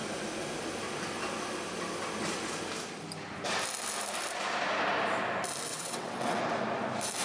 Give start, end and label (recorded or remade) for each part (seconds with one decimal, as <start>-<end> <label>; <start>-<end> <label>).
0.0-5.7 recorded; 5.7-6.4 remade; 6.4-7.2 recorded